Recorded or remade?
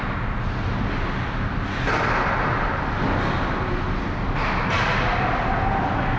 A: recorded